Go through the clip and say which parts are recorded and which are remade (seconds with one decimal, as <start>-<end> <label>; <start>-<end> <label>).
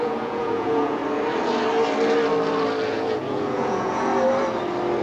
0.0-1.0 remade; 1.0-2.9 recorded; 2.9-4.1 remade; 4.1-5.0 recorded